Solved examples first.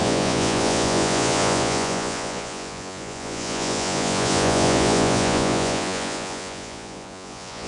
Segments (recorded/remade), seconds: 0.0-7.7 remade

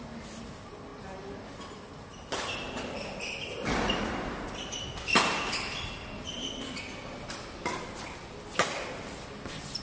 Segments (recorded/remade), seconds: 0.0-9.8 recorded

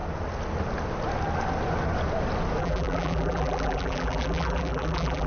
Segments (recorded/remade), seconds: 0.0-2.6 recorded; 2.6-5.3 remade

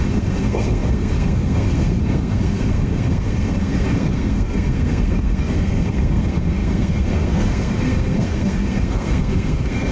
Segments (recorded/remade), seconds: 0.0-9.9 remade